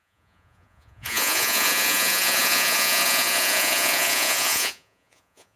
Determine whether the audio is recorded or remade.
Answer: remade